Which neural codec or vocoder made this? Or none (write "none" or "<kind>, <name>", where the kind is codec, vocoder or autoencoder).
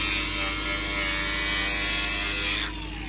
none